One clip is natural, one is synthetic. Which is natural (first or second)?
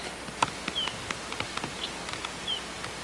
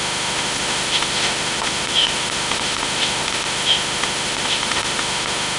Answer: first